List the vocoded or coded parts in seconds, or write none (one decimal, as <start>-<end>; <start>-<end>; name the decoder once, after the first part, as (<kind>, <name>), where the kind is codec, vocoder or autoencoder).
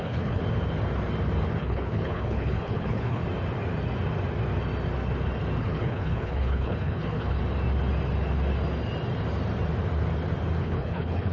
0.0-0.4 (codec, HILCodec); 1.6-3.2; 5.6-7.4; 10.6-11.3